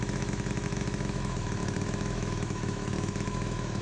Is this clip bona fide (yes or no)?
no